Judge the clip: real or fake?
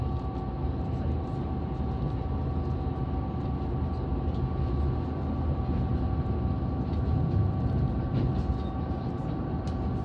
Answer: real